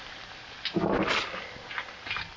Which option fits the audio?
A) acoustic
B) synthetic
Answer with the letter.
A